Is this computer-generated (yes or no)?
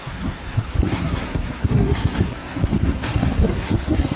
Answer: yes